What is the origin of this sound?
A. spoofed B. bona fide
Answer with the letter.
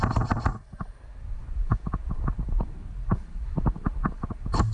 A